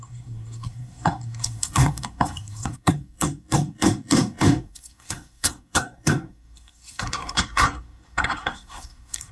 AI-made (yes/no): yes